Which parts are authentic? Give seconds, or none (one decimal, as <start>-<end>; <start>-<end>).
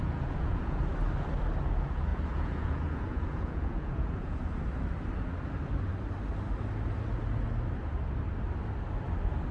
0.8-2.1; 4.4-9.5